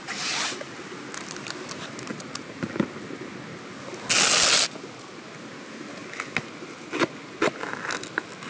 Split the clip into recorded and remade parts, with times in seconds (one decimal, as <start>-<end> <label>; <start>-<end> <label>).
0.0-2.1 recorded; 2.1-2.6 remade; 2.6-8.5 recorded